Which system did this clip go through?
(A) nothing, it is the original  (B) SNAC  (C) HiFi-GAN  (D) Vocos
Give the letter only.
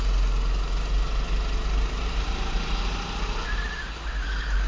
A